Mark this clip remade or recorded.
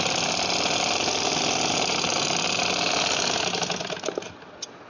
recorded